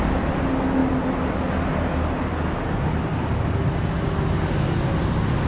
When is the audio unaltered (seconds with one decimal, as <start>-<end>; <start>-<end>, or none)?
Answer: 0.0-5.5